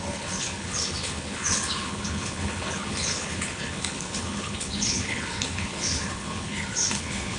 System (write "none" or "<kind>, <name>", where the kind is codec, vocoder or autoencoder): codec, HILCodec